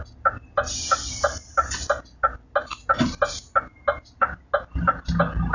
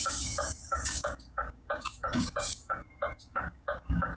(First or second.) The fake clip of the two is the second